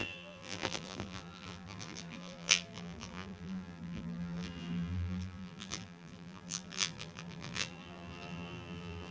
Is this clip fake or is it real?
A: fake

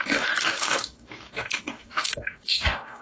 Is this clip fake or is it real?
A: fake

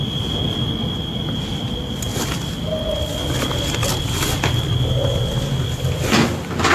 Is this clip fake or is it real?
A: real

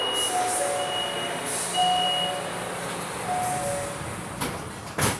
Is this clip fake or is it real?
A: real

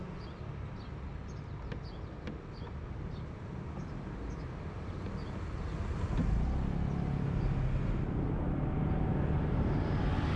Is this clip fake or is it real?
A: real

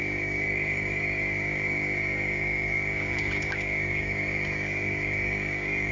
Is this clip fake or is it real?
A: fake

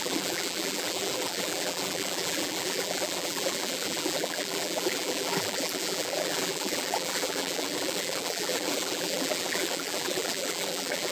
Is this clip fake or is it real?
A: fake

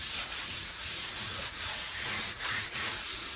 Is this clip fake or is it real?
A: fake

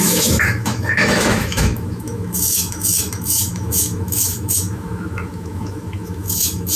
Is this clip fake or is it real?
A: fake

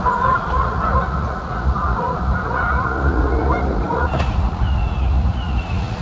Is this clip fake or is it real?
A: fake